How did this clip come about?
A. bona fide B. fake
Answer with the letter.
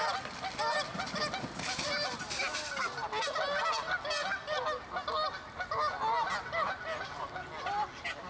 A